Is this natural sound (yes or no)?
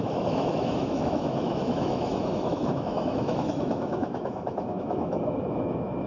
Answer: no